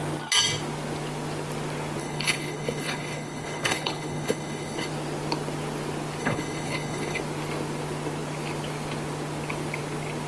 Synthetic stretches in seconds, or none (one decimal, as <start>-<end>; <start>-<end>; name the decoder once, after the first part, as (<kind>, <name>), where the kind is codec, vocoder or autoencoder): 2.0-4.9 (codec, HILCodec); 6.2-7.2